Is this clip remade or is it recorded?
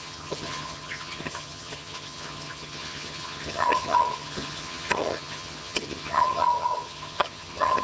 remade